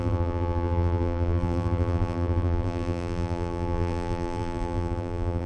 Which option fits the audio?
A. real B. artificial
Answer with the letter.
B